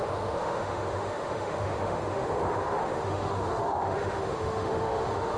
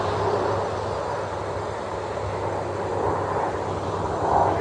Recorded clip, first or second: second